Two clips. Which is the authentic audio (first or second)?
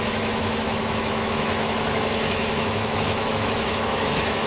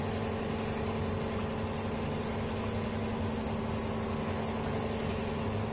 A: second